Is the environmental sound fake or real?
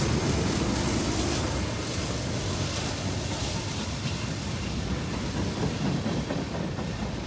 real